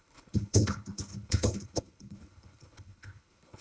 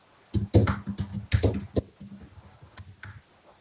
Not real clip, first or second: first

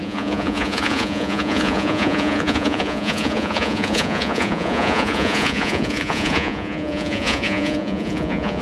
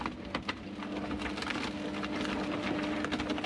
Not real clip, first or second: first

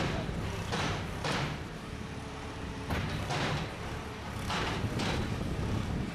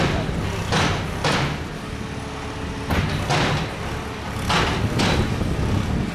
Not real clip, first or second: first